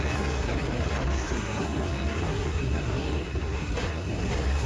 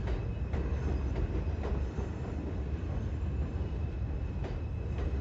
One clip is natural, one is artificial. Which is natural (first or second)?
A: second